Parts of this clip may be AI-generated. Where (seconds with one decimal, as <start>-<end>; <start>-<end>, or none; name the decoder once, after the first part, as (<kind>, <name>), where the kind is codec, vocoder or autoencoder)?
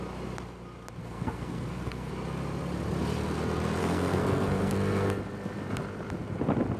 1.0-2.1 (codec, SNAC); 3.8-5.2